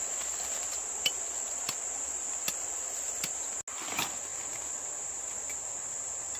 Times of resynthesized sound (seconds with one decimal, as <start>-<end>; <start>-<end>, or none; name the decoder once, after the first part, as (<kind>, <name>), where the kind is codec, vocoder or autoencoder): none